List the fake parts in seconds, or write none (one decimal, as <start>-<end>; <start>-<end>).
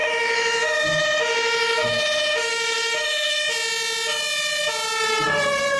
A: 0.0-3.4